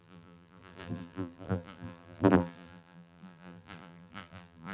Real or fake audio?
fake